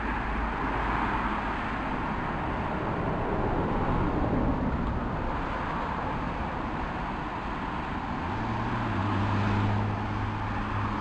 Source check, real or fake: real